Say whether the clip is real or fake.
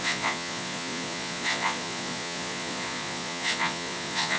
fake